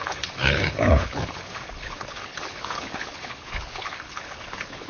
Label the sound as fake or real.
fake